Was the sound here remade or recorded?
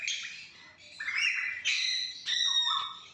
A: recorded